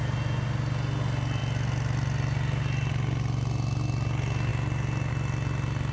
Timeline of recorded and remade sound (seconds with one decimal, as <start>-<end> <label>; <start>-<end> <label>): 0.0-5.9 recorded